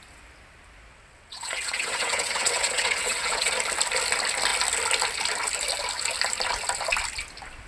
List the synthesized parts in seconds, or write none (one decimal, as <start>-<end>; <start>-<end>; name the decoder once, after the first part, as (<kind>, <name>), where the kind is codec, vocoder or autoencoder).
0.9-3.5 (vocoder, WaveNeXt)